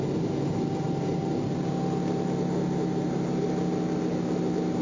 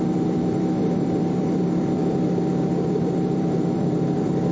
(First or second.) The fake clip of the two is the second